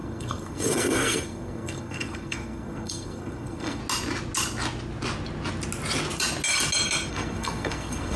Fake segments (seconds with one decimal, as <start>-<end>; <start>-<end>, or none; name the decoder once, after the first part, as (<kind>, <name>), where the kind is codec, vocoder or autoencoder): 0.0-3.8 (codec, SNAC); 7.1-8.2